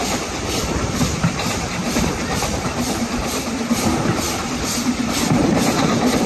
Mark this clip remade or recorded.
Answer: remade